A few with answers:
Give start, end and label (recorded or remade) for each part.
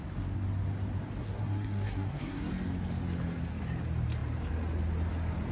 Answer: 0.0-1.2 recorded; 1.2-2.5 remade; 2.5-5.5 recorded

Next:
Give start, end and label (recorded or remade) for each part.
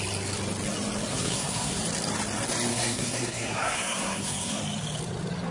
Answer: 0.0-1.1 recorded; 1.1-1.8 remade; 1.8-2.7 recorded; 2.7-4.6 remade; 4.6-5.5 recorded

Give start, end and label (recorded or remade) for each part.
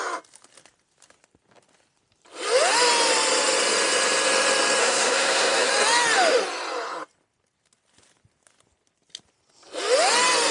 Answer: 0.0-4.8 recorded; 4.8-5.7 remade; 5.7-10.5 recorded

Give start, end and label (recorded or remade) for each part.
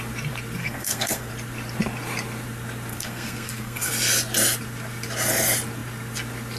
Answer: 0.0-0.6 recorded; 0.6-1.3 remade; 1.3-2.9 recorded; 2.9-3.9 remade; 3.9-6.6 recorded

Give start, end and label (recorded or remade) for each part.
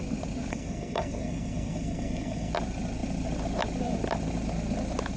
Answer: 0.0-0.5 recorded; 0.5-2.5 remade; 2.5-5.2 recorded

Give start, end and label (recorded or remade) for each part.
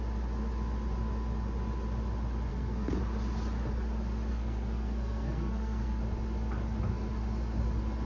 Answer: 0.0-2.5 recorded; 2.5-3.0 remade; 3.0-4.3 recorded; 4.3-6.0 remade; 6.0-8.1 recorded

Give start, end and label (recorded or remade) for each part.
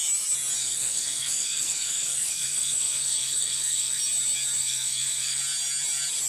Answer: 0.0-0.6 recorded; 0.6-4.0 remade; 4.0-4.6 recorded; 4.6-5.4 remade; 5.4-6.3 recorded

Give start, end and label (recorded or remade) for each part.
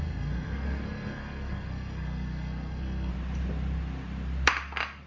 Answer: 0.0-3.1 remade; 3.1-5.1 recorded